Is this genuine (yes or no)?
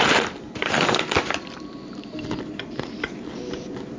no